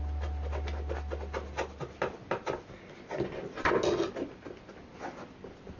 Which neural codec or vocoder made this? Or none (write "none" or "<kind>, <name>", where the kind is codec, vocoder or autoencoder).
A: none